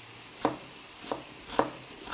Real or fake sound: real